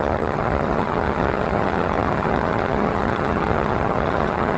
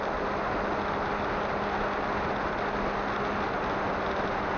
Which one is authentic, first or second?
second